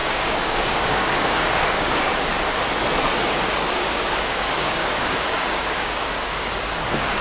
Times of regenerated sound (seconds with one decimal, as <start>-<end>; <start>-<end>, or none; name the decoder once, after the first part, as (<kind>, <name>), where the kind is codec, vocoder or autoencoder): 0.0-2.1 (codec, DAC); 3.7-7.2